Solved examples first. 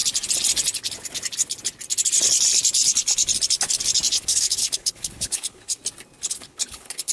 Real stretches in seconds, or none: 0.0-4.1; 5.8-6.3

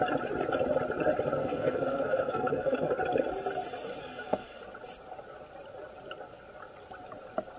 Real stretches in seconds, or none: 0.0-1.4; 2.9-4.0; 4.6-7.6

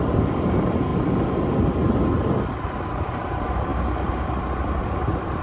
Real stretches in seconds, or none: 0.9-2.8; 3.7-4.8

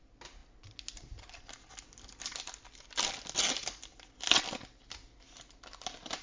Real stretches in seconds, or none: 0.0-6.2

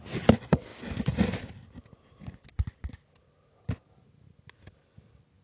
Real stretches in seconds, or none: 0.0-5.4

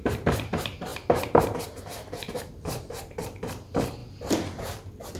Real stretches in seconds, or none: 4.0-5.2

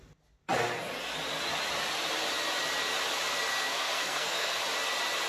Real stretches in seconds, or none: 0.0-3.5; 4.6-5.3